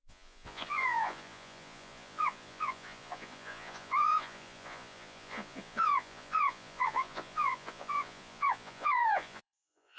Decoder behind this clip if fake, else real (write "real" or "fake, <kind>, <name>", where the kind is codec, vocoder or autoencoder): fake, vocoder, Vocos